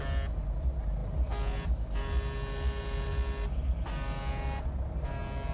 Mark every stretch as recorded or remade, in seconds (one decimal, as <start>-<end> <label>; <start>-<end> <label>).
0.0-5.5 recorded